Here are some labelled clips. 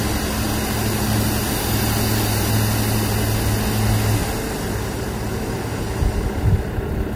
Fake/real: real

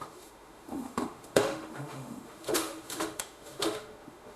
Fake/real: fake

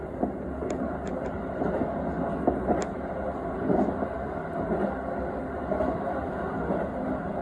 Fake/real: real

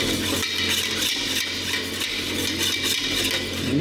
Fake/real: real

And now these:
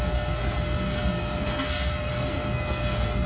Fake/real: fake